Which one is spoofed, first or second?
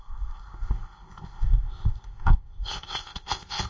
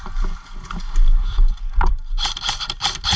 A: first